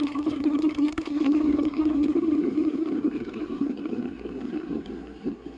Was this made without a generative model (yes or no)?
no